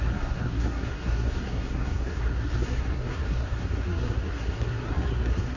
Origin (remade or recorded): remade